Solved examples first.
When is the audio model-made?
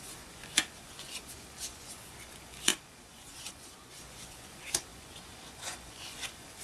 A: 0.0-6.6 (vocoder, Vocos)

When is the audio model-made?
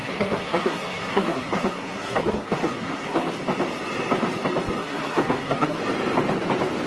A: 0.0-3.3 (codec, SNAC); 4.8-5.8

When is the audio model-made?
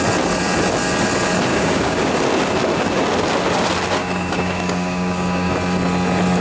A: 1.5-2.1 (codec, DAC); 4.0-5.5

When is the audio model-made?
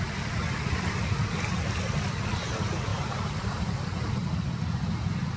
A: 2.9-4.1 (vocoder, BigVGAN v2)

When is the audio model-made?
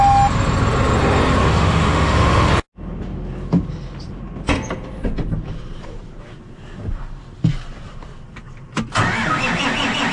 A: 1.4-2.5 (autoencoder, DAC-VAE)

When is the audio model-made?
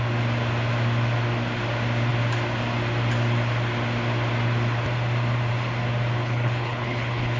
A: 6.2-7.4 (codec, HILCodec)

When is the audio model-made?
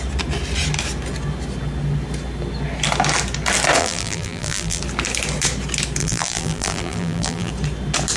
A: 3.8-4.8 (vocoder, BigVGAN v2); 6.0-7.5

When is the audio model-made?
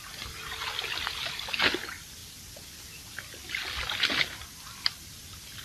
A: none